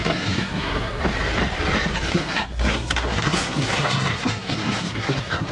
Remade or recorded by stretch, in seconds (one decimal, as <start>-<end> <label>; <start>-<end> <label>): 0.0-1.0 remade; 1.0-2.1 recorded; 2.1-5.5 remade